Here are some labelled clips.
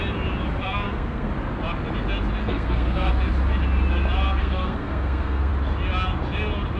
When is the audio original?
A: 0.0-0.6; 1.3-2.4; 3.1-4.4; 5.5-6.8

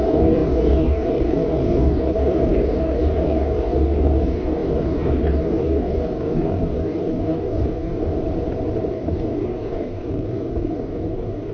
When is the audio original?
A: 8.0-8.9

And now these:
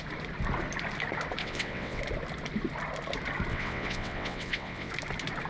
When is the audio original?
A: 0.0-1.4; 2.0-3.5; 4.9-5.5